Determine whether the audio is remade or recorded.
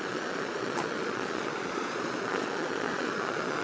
remade